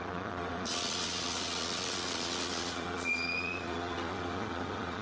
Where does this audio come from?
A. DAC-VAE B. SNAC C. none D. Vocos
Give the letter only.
D